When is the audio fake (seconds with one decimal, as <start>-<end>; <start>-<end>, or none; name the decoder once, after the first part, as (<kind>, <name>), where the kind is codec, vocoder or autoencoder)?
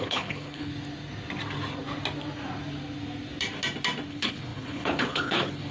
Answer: 0.0-0.7 (codec, HILCodec); 4.1-5.7